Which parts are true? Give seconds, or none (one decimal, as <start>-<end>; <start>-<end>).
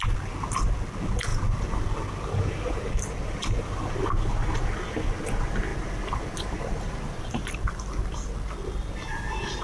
0.0-5.7